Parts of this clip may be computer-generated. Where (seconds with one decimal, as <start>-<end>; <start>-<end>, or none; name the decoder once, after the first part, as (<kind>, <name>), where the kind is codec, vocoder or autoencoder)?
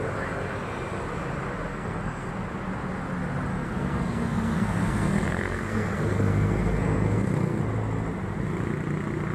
1.7-2.3 (codec, SNAC); 3.5-7.6